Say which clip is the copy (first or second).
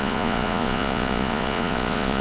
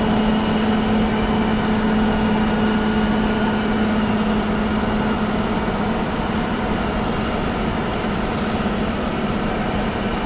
first